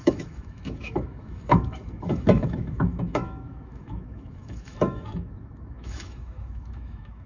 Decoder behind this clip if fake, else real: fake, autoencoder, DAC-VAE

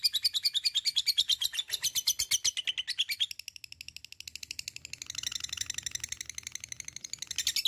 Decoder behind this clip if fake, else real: real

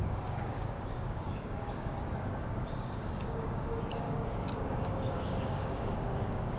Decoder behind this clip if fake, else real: fake, codec, DAC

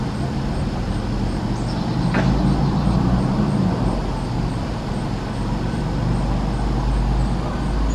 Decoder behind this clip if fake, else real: real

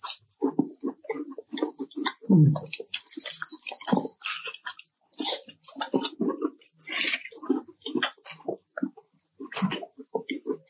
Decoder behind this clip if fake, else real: real